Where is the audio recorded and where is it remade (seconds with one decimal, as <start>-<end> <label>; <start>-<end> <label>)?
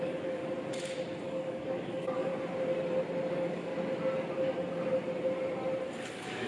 0.0-0.4 remade; 0.4-1.2 recorded; 1.2-2.3 remade; 2.3-3.3 recorded; 3.3-3.7 remade; 3.7-6.1 recorded; 6.1-6.5 remade